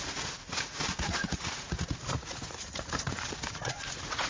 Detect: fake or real fake